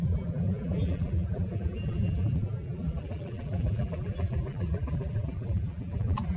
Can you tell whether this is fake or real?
fake